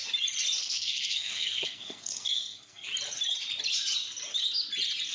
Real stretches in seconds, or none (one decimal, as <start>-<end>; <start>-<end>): 0.0-0.6; 2.9-5.1